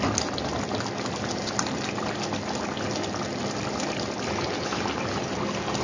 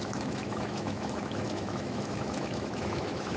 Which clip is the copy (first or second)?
second